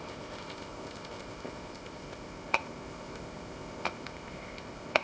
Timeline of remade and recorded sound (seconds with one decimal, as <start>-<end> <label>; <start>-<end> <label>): 0.0-5.0 remade